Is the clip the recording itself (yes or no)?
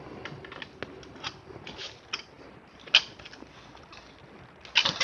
yes